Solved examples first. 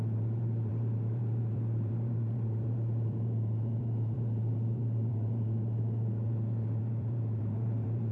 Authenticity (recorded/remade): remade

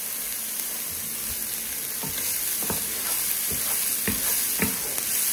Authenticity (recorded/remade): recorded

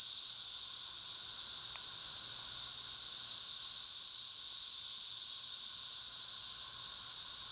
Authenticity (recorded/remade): recorded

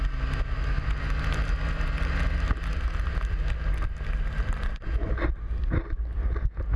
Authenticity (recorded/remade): recorded